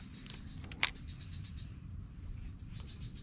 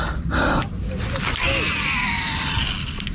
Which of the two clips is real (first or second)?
second